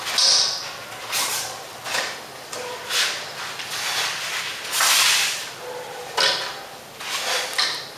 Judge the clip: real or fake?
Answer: real